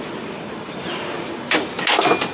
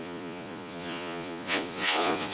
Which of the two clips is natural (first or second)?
first